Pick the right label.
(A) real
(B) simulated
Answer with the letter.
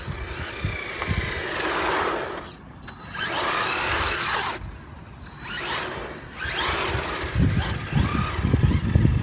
A